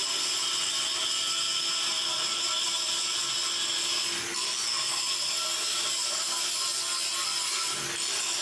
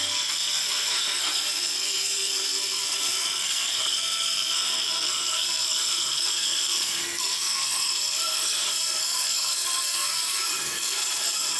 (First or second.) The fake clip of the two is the second